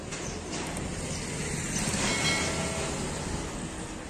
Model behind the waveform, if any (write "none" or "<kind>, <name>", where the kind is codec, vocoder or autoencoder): none